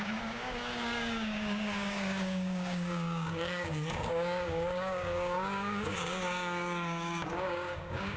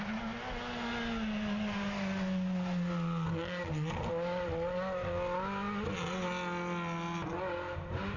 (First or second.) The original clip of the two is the second